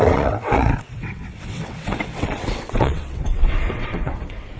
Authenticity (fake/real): fake